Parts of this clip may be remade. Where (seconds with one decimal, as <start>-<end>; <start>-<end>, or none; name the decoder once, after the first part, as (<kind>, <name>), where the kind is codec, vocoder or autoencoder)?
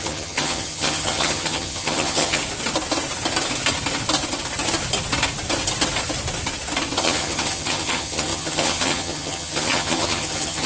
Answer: 0.0-2.4 (vocoder, HiFi-GAN); 7.0-10.7